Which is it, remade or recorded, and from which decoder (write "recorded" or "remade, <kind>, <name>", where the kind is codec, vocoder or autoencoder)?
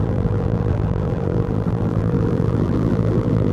remade, vocoder, BigVGAN v2